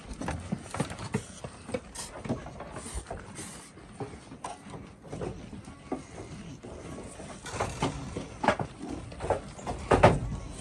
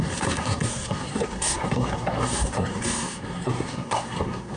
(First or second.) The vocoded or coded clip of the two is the second